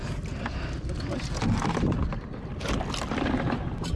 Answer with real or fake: real